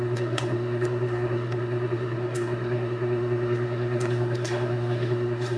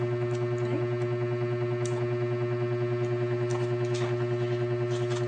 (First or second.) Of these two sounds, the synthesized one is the first